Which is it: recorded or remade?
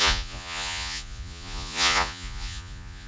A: remade